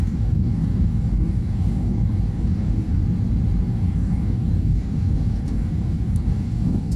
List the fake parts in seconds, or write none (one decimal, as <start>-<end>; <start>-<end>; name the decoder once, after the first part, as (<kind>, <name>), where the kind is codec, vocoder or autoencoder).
0.0-3.0 (codec, DAC); 3.6-7.0